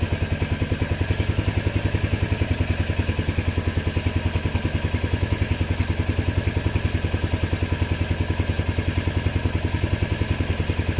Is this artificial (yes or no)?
no